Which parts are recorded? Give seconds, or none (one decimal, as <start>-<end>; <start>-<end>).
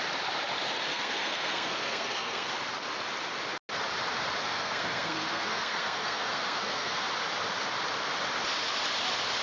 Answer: 0.0-0.9; 2.5-4.4; 7.0-9.4